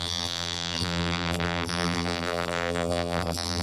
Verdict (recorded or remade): remade